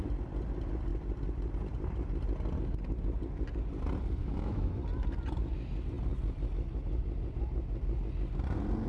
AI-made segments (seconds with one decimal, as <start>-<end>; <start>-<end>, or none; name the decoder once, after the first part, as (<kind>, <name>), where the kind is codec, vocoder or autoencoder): 4.2-4.7 (autoencoder, DAC-VAE)

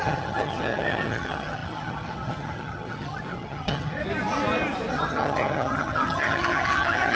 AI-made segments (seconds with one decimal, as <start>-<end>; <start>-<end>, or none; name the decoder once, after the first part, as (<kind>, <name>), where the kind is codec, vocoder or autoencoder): 0.0-4.0 (vocoder, HiFi-GAN); 4.9-7.2

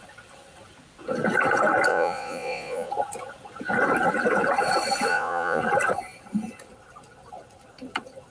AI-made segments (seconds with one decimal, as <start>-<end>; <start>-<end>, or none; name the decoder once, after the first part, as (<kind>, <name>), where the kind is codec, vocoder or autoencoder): 1.9-2.9 (vocoder, Vocos); 5.1-5.6

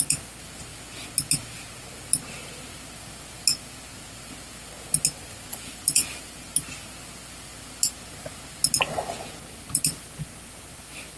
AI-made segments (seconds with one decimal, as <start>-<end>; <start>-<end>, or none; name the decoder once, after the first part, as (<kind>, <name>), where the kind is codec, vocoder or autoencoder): 5.5-6.3 (vocoder, BigVGAN v2)

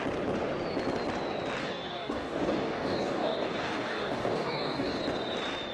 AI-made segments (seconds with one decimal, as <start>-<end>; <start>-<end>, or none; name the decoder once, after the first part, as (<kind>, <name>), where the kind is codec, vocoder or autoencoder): 1.6-5.0 (codec, DAC)

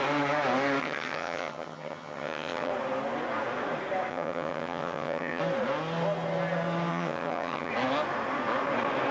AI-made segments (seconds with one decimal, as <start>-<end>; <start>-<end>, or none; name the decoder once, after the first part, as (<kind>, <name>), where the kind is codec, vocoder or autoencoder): 0.8-2.7 (vocoder, HiFi-GAN); 4.1-5.4; 6.9-7.7

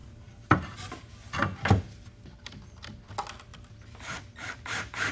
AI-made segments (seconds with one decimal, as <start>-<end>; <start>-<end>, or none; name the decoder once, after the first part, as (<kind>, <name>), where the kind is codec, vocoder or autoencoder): none

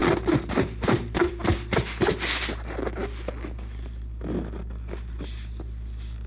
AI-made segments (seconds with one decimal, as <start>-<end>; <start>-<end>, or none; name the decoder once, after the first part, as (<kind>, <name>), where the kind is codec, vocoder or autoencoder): none